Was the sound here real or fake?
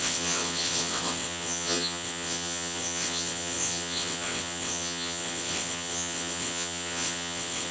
fake